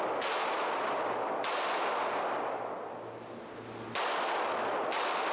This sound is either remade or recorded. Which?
recorded